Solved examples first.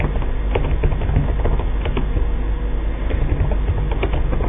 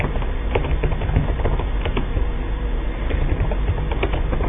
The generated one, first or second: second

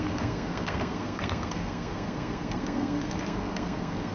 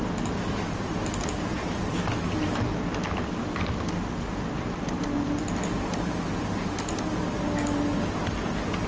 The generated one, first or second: first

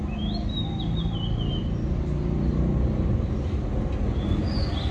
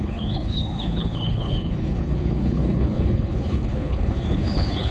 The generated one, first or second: second